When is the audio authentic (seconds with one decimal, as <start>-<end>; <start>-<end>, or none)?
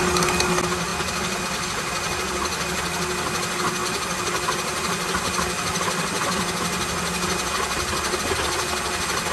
0.0-9.3